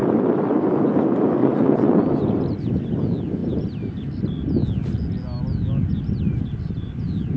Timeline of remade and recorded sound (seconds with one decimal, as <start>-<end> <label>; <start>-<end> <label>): 0.0-1.4 recorded; 1.4-2.0 remade; 2.0-7.4 recorded